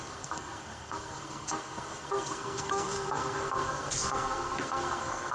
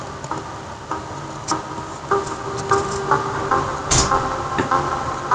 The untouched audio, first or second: second